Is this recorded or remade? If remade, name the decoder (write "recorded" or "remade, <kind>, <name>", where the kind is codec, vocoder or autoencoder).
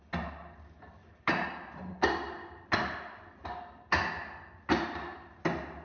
recorded